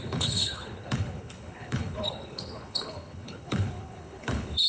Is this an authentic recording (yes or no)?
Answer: no